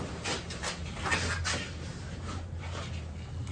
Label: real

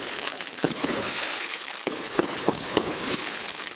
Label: fake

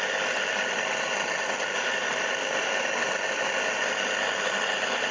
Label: real